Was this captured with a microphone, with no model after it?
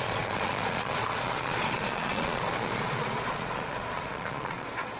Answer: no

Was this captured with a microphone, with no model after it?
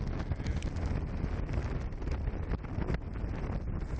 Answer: yes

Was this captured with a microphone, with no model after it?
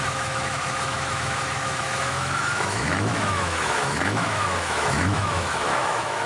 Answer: no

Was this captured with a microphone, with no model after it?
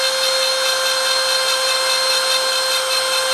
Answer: yes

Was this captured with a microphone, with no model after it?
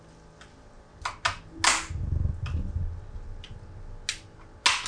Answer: yes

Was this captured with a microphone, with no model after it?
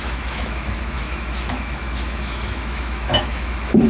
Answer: no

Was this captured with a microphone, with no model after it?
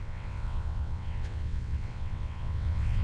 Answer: no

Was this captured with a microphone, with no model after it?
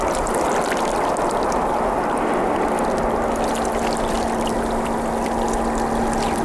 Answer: yes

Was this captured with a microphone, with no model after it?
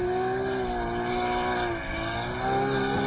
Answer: yes